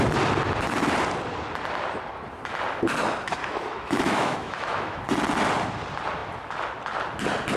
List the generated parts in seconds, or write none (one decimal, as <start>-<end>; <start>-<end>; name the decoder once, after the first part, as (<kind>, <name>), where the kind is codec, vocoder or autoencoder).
3.4-5.0 (autoencoder, DAC-VAE)